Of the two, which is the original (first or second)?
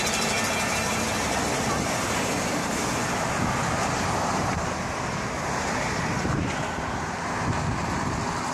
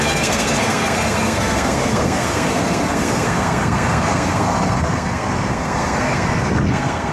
first